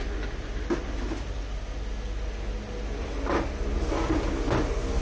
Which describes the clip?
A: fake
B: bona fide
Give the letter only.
B